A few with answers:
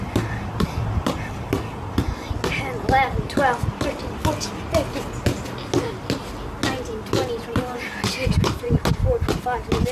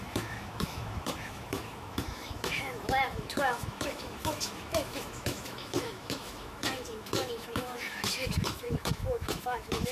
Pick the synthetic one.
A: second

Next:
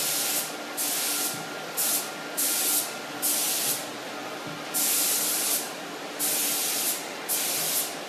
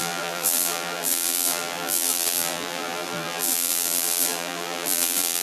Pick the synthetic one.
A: second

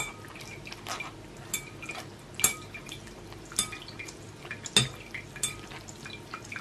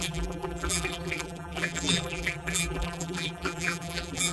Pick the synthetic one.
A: second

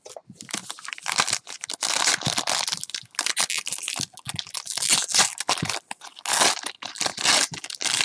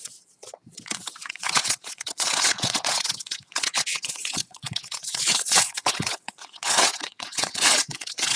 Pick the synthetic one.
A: second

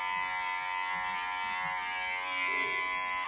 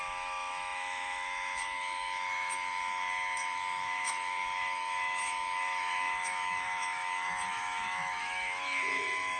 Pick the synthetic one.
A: second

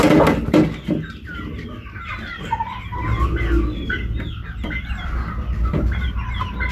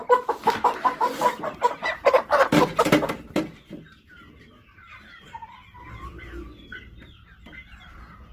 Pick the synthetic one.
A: second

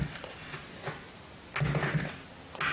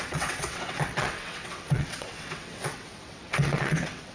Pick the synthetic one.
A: second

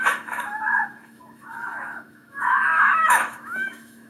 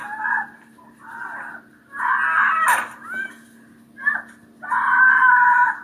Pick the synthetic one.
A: first